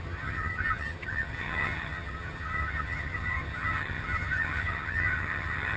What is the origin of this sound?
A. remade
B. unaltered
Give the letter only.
A